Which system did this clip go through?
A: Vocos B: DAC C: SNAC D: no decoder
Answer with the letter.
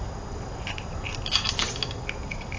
D